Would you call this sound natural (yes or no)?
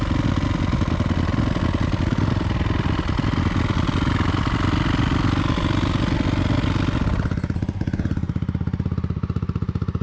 yes